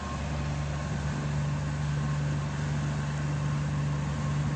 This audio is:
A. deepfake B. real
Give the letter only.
B